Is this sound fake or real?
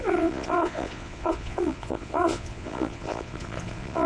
fake